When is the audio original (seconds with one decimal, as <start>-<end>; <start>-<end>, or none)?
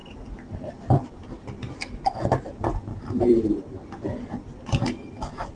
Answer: 0.0-2.9; 3.6-5.6